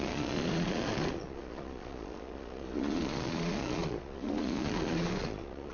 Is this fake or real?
fake